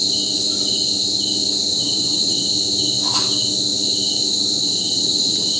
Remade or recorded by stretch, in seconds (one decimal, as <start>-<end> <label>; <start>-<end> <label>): 0.0-1.7 recorded; 1.7-2.5 remade; 2.5-4.6 recorded; 4.6-5.6 remade